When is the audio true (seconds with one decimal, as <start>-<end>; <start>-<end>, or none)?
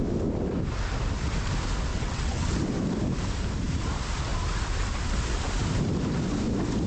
0.0-1.9; 2.5-6.9